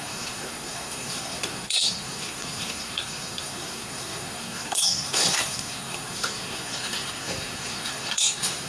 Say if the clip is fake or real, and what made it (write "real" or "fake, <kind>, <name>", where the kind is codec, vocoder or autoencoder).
fake, codec, SNAC